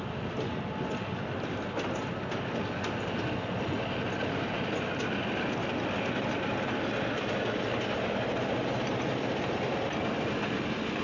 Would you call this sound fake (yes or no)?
no